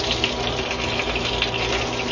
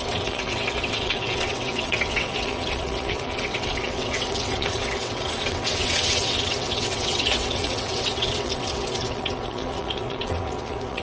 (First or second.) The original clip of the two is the first